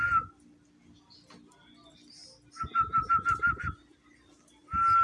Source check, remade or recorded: recorded